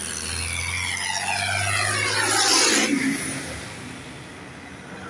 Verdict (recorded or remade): recorded